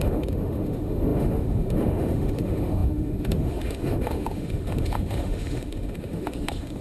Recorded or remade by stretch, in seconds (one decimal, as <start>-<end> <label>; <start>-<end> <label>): 0.0-6.8 remade